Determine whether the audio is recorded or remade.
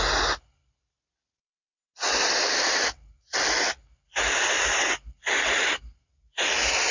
recorded